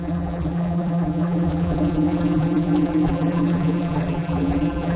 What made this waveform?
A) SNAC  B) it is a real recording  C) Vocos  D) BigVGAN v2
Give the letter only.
D